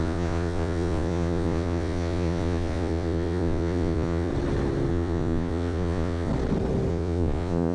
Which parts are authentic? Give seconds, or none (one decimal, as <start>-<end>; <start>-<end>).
4.3-4.9; 6.3-6.9